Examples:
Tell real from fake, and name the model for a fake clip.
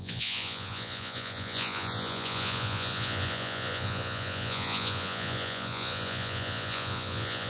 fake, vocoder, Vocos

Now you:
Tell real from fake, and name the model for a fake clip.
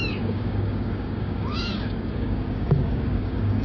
fake, codec, DAC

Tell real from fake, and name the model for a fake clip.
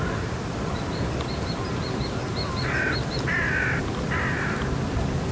real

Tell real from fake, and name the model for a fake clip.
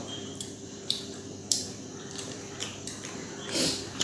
fake, vocoder, BigVGAN v2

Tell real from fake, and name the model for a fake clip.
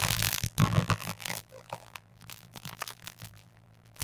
fake, vocoder, BigVGAN v2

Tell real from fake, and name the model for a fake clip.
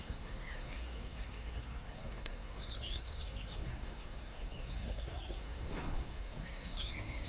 fake, codec, SNAC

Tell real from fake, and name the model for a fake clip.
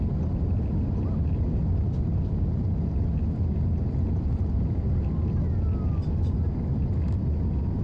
real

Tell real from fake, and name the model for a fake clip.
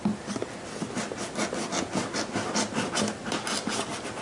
real